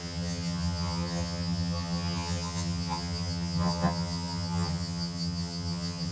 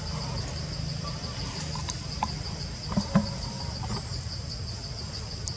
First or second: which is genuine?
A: second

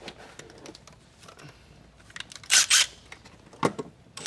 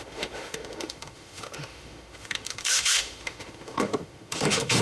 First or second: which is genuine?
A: first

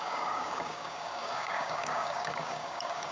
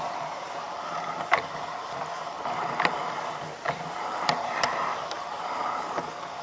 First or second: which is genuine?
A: second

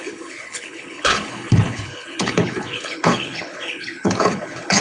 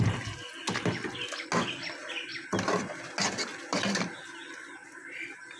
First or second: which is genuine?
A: second